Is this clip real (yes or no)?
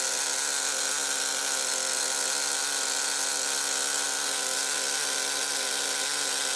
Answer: yes